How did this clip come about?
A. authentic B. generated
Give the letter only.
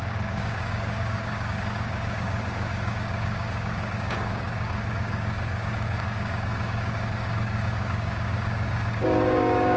B